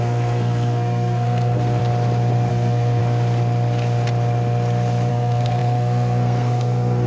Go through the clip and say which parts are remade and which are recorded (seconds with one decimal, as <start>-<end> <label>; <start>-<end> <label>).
0.0-1.8 remade; 1.8-2.5 recorded; 2.5-3.0 remade; 3.0-5.1 recorded; 5.1-7.1 remade